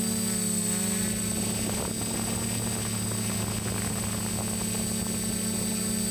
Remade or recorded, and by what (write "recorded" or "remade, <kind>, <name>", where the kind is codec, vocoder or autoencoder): recorded